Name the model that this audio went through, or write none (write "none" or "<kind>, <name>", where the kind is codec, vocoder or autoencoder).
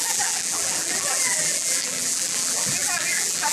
vocoder, BigVGAN v2